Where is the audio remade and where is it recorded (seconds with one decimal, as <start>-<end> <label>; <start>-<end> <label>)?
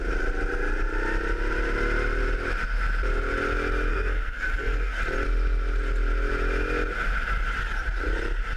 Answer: 0.0-3.9 recorded; 3.9-5.0 remade; 5.0-8.6 recorded